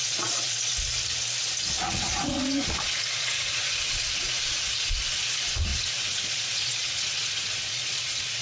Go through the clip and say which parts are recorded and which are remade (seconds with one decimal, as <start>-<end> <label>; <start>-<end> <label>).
0.0-0.7 remade; 0.7-1.4 recorded; 1.4-8.4 remade